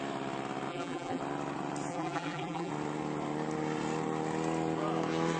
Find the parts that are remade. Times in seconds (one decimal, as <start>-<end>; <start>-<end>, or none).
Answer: 0.7-1.2; 1.9-2.7